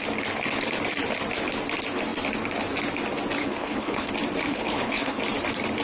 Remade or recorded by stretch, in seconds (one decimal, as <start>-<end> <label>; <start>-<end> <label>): 0.0-3.4 recorded; 3.4-4.1 remade; 4.1-4.5 recorded; 4.5-5.2 remade; 5.2-5.8 recorded